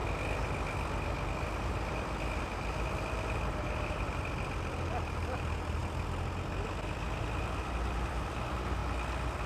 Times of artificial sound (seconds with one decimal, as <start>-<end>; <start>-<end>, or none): 2.4-5.8; 7.2-8.8